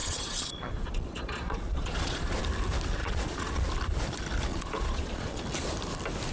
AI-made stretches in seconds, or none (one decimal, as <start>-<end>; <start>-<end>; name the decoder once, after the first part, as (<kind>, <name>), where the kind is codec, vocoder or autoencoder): 0.0-2.4 (vocoder, Vocos); 3.0-3.7; 4.5-5.4